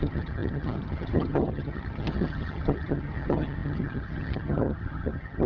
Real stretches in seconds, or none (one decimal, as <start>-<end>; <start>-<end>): none